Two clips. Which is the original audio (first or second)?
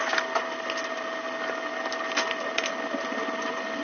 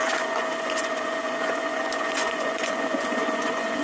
first